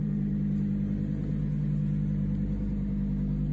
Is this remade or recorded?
recorded